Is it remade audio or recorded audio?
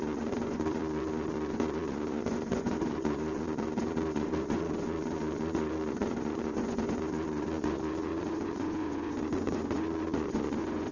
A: remade